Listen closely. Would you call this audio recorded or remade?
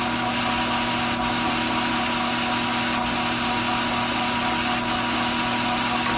recorded